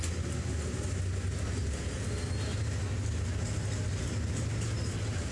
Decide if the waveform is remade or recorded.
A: recorded